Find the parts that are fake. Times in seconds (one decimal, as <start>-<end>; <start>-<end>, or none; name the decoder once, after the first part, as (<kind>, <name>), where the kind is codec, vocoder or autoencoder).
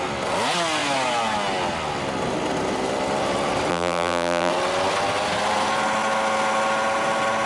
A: 3.7-4.5 (vocoder, BigVGAN v2)